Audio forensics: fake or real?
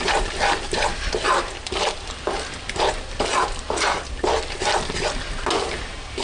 real